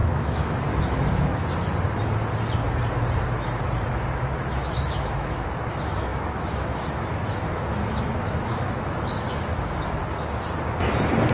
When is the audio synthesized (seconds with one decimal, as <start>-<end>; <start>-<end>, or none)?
0.0-1.4; 3.9-10.0